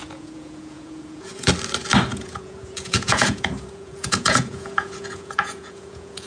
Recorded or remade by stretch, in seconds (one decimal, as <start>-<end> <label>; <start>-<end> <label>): 0.0-1.5 remade; 1.5-2.1 recorded; 2.1-6.3 remade